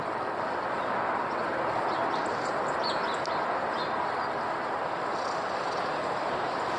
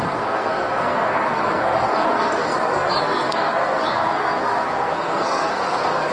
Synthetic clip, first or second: second